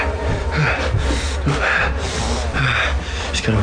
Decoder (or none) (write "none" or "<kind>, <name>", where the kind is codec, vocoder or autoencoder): none